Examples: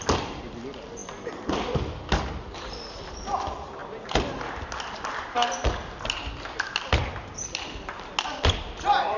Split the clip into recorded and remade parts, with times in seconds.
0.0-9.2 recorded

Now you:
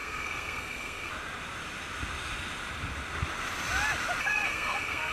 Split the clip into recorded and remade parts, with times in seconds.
0.0-1.1 remade; 1.1-4.2 recorded; 4.2-5.1 remade

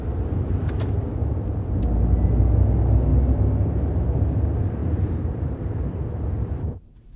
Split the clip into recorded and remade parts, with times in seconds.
0.0-0.6 remade; 0.6-1.2 recorded; 1.2-1.8 remade; 1.8-4.8 recorded; 4.8-7.2 remade